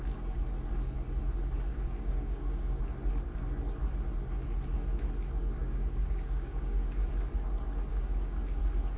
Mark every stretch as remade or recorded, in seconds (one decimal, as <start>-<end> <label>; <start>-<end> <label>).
0.0-1.7 recorded; 1.7-2.8 remade; 2.8-5.6 recorded; 5.6-7.1 remade; 7.1-7.9 recorded; 7.9-8.6 remade; 8.6-9.0 recorded